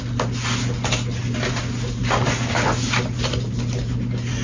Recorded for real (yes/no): yes